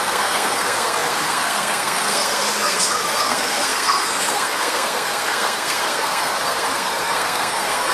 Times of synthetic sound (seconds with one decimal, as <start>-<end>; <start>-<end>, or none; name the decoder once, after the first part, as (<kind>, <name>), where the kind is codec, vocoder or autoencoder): 0.0-7.9 (codec, SNAC)